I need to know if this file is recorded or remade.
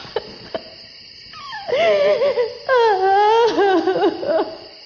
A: recorded